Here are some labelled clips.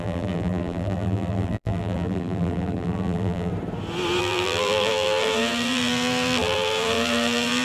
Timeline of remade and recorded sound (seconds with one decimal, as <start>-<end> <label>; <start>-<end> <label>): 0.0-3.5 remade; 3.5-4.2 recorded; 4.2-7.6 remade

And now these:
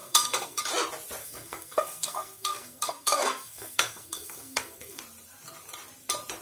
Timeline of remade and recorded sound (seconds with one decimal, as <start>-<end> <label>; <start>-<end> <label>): 0.0-0.6 remade; 0.6-1.2 recorded; 1.2-5.0 remade; 5.0-6.4 recorded

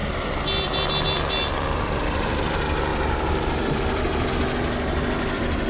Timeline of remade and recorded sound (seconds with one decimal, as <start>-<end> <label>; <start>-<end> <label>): 0.0-2.9 recorded; 2.9-4.3 remade; 4.3-5.7 recorded

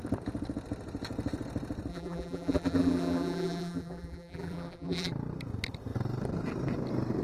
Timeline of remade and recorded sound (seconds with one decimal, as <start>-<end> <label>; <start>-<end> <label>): 0.0-1.9 recorded; 1.9-5.1 remade; 5.1-7.2 recorded

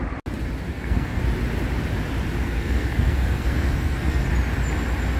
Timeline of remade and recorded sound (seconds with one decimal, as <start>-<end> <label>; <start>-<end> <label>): 0.0-0.7 recorded; 0.7-1.2 remade; 1.2-2.4 recorded; 2.4-4.2 remade; 4.2-5.2 recorded

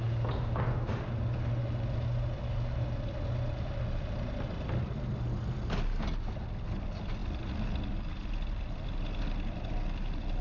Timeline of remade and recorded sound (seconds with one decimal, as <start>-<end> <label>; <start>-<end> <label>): 0.0-10.4 recorded